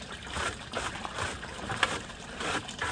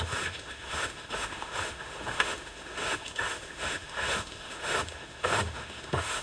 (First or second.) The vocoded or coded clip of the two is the second